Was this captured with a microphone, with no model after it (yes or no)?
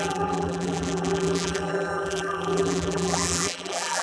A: no